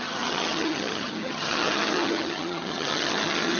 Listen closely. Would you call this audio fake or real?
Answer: fake